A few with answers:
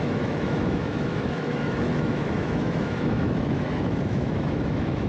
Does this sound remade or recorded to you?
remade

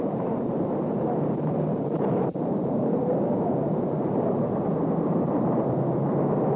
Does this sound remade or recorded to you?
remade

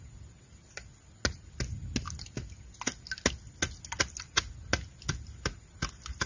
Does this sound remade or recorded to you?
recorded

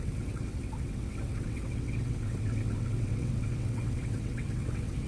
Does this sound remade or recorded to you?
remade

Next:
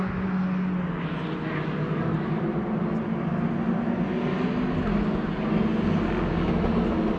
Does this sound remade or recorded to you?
recorded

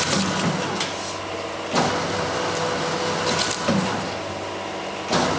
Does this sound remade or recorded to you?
recorded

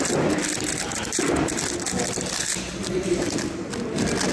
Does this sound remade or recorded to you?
recorded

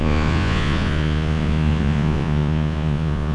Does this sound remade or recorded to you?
remade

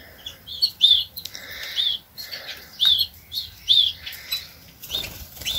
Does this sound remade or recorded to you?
recorded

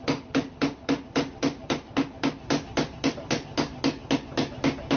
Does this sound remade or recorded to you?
recorded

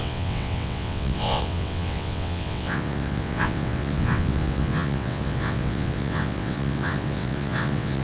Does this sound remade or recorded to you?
remade